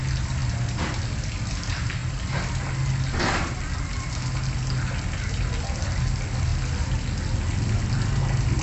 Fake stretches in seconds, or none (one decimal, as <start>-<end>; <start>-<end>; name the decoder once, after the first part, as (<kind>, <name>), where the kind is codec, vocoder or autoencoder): none